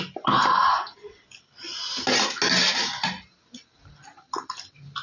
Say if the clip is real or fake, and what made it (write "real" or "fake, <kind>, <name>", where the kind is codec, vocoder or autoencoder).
real